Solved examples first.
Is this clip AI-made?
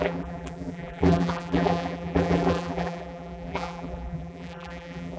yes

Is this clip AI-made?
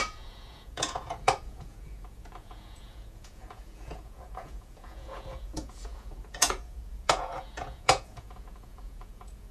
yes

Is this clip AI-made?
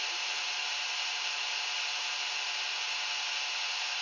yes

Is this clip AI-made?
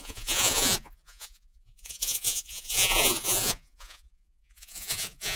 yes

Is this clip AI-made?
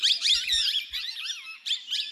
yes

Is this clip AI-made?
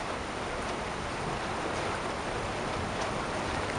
no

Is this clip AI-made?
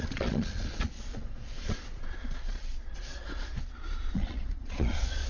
yes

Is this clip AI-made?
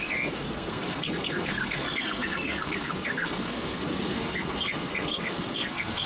yes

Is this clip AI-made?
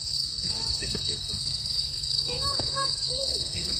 yes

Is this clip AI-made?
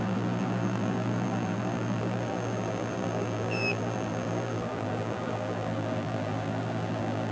yes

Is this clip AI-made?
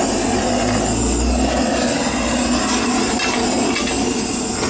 no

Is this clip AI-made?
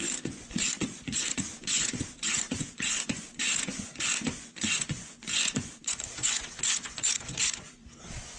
yes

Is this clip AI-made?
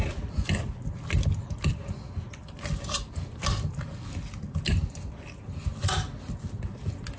no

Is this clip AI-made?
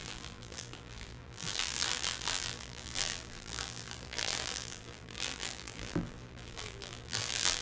yes